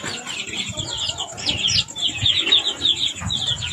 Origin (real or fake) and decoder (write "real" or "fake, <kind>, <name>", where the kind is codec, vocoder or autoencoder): real